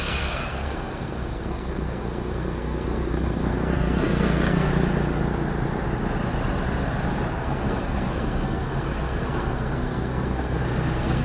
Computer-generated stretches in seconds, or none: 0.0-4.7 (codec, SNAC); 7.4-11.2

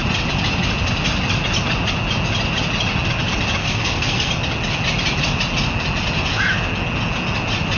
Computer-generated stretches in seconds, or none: 3.6-4.3 (codec, SNAC)

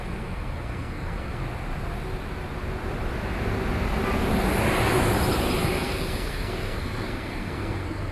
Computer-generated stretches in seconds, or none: 0.0-1.4 (codec, SNAC); 5.6-8.1